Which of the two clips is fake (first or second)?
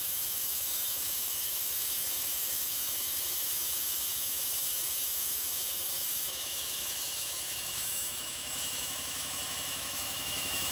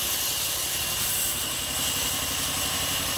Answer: first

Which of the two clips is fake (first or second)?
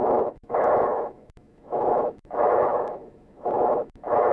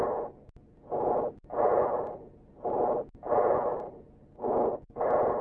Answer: first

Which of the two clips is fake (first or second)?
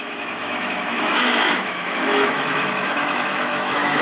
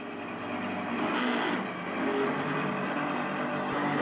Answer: first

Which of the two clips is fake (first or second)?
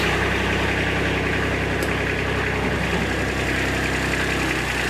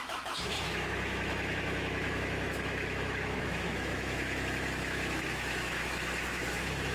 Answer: second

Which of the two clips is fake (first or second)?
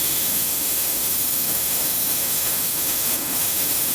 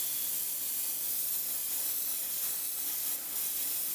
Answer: first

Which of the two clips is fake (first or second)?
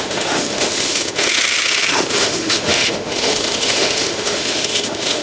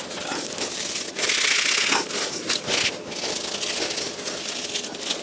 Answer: first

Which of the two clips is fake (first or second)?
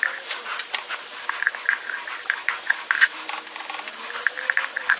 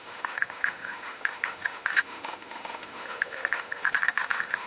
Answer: second